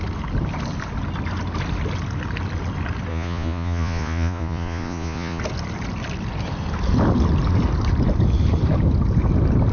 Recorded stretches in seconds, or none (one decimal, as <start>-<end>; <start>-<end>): 0.0-3.1; 5.4-9.7